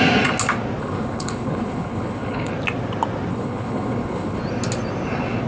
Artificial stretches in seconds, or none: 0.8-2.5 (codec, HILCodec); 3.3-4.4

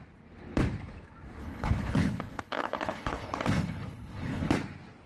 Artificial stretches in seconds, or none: 1.4-4.5 (codec, HILCodec)

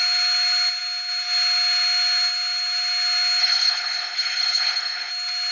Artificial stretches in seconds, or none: 3.4-5.1 (codec, HILCodec)

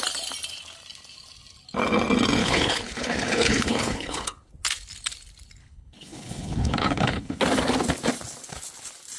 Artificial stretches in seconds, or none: 2.4-4.5 (codec, HILCodec); 5.6-7.4

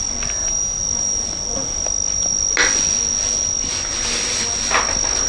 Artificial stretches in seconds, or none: none

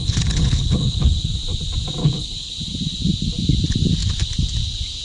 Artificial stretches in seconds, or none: 0.0-1.3 (codec, HILCodec); 2.0-2.5